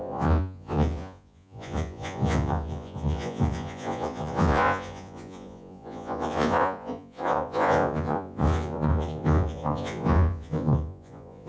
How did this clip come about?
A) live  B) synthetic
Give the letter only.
B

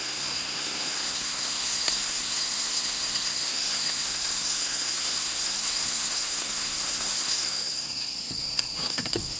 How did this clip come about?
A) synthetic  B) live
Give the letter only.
A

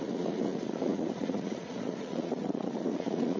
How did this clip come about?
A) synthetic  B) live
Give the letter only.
A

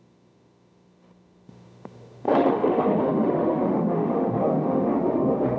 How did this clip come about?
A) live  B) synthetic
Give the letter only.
B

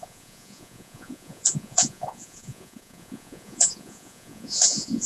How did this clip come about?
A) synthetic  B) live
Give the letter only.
A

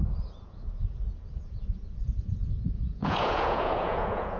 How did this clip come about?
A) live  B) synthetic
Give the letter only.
B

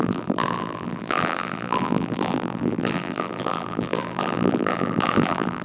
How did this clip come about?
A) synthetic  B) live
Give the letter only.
A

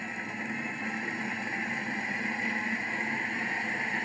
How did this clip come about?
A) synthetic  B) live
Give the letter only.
B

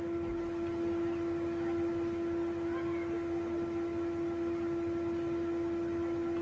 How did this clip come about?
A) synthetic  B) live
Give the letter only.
B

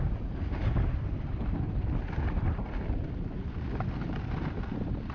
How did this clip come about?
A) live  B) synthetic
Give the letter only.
A